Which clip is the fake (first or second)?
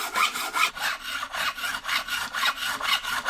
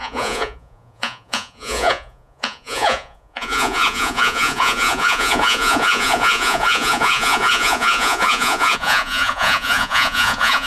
second